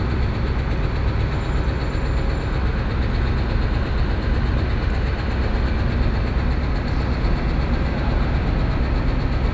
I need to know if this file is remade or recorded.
recorded